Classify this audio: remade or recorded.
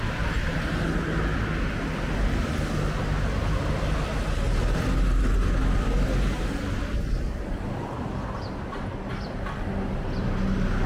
recorded